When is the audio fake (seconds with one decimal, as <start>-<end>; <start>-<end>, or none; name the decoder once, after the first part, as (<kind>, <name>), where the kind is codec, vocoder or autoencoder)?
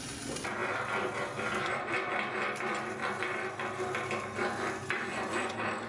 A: 5.1-5.9 (vocoder, Vocos)